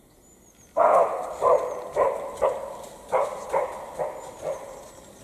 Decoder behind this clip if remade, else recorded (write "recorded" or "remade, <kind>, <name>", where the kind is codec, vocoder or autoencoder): recorded